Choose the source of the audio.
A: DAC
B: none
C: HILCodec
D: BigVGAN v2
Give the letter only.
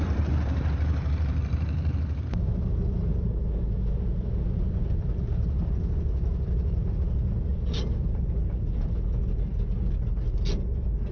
D